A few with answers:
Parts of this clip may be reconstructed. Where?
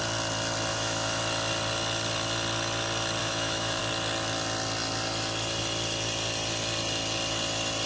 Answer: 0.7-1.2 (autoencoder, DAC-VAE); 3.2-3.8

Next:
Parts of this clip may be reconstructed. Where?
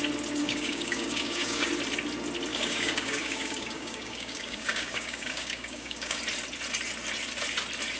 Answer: 0.4-1.7 (codec, DAC); 2.5-6.2